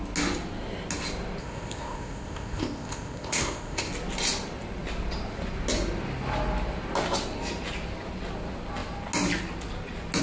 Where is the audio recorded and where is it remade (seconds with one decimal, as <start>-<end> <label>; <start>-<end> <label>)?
0.0-1.4 recorded; 1.4-3.9 remade; 3.9-10.2 recorded